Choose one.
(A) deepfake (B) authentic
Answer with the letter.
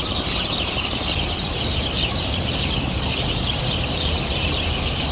A